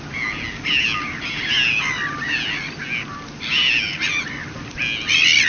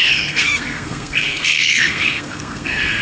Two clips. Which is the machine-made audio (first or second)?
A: second